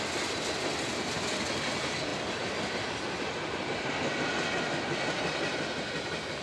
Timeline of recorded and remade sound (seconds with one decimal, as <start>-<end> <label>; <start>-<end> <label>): 0.0-6.4 recorded